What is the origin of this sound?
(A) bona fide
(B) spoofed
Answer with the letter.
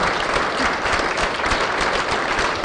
A